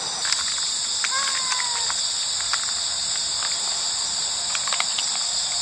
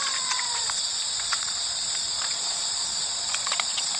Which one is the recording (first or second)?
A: first